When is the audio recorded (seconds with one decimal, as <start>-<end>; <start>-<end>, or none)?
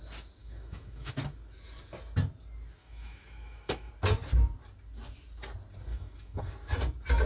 0.0-0.4; 1.1-2.8; 3.9-5.9; 6.4-7.3